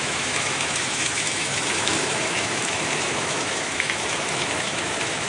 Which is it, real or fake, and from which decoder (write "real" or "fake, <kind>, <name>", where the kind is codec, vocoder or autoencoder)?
fake, autoencoder, DAC-VAE